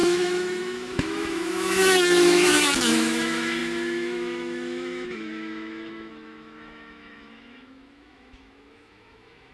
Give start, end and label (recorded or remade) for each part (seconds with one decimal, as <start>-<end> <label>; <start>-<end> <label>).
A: 0.0-9.5 remade